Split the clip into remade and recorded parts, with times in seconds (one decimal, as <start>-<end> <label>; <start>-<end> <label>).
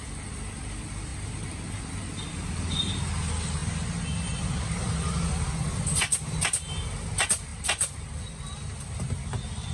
0.0-9.7 recorded